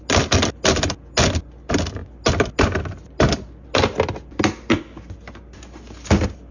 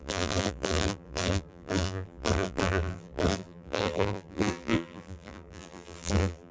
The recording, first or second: first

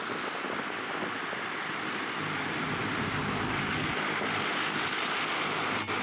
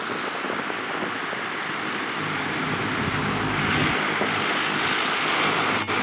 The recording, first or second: second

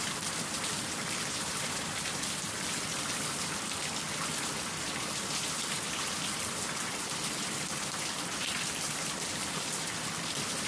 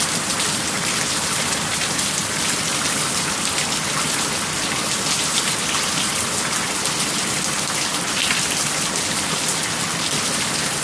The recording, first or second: second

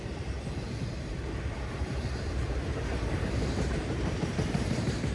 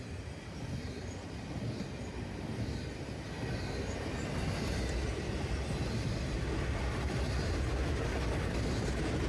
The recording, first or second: second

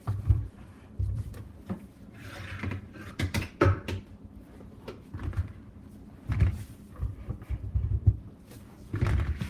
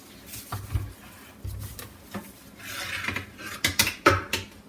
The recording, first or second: second